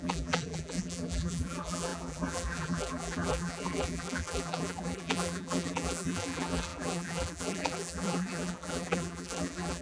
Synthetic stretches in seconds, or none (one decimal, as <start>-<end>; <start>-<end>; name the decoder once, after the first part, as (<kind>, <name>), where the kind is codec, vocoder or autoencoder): 0.0-9.8 (vocoder, BigVGAN v2)